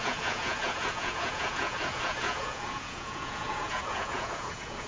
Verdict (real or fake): fake